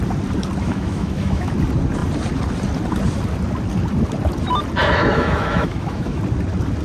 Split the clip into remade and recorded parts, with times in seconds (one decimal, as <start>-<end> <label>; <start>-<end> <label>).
0.0-0.6 recorded; 0.6-1.5 remade; 1.5-4.8 recorded; 4.8-6.2 remade; 6.2-6.8 recorded